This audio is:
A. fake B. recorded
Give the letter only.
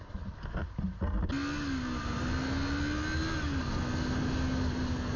B